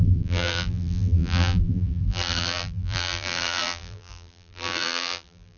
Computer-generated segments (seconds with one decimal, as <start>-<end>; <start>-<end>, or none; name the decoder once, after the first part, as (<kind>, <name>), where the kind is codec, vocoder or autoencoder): 0.0-5.6 (vocoder, BigVGAN v2)

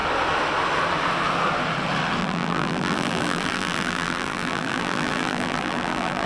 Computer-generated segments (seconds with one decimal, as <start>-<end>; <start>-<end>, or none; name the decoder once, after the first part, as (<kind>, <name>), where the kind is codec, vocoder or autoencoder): 2.2-6.3 (vocoder, BigVGAN v2)

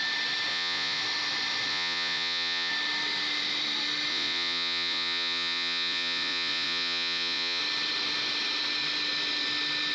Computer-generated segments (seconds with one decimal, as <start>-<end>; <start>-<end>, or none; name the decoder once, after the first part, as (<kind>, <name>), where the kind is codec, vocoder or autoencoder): 0.5-1.0 (vocoder, Vocos); 1.7-2.7; 4.1-7.6